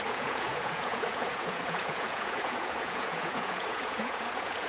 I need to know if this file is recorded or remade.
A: remade